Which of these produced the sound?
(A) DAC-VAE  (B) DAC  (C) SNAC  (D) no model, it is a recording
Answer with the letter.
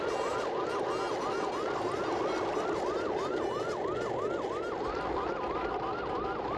D